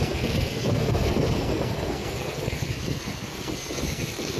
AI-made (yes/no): yes